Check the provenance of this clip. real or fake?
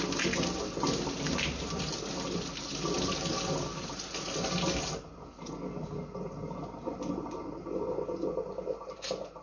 real